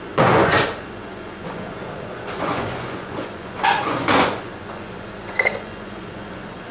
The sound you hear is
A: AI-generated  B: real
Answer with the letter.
A